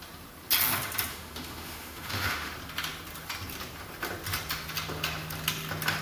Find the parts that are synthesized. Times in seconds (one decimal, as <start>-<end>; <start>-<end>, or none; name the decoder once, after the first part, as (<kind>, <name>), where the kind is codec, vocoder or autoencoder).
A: 1.1-2.5 (autoencoder, DAC-VAE)